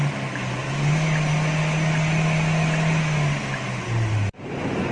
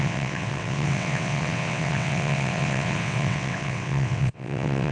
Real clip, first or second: first